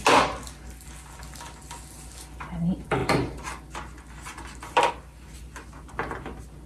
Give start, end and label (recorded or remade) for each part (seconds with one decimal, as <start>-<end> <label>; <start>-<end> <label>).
0.0-6.7 recorded